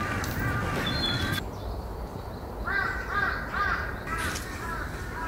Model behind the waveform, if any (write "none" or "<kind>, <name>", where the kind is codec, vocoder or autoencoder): none